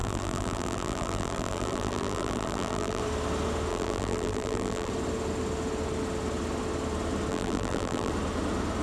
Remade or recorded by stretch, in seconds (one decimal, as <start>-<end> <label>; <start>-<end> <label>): 0.0-3.0 remade; 3.0-3.7 recorded; 3.7-4.9 remade; 4.9-7.3 recorded; 7.3-8.1 remade; 8.1-8.8 recorded